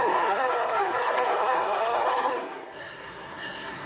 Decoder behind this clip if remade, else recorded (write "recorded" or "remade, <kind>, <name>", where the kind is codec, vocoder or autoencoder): remade, codec, SNAC